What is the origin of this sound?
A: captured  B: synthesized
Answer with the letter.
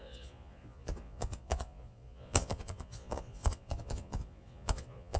B